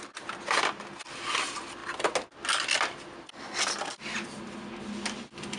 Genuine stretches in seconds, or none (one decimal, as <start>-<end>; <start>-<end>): 0.0-5.6